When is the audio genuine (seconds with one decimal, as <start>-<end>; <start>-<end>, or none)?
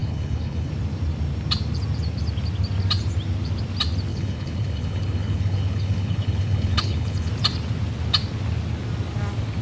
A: 0.7-4.1; 7.3-9.6